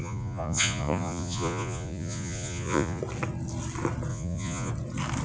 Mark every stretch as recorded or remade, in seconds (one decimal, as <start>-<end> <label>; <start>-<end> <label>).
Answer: 0.0-3.0 remade; 3.0-4.1 recorded; 4.1-4.7 remade; 4.7-5.2 recorded